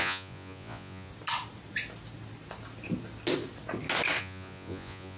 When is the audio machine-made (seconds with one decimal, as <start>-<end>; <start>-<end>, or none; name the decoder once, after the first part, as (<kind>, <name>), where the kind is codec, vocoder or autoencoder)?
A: 0.0-1.1 (vocoder, Vocos); 4.2-5.2